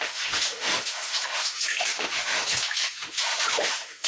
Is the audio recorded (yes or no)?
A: no